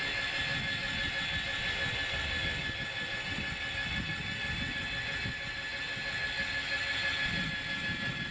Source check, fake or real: real